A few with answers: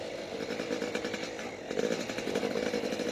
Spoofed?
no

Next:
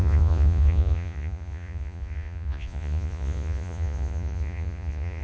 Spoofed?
yes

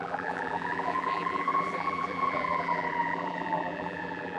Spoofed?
yes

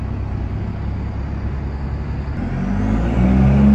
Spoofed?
no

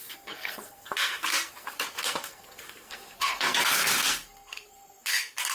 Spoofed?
yes